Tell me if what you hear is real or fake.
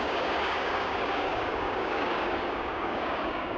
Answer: fake